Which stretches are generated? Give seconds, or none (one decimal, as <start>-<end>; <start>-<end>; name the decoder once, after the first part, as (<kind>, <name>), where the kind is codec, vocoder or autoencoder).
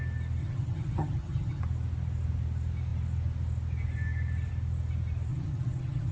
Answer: 0.4-1.6 (vocoder, HiFi-GAN); 5.3-6.1